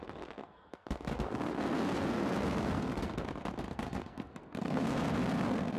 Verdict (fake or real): fake